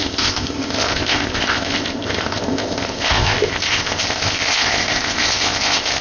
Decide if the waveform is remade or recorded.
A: remade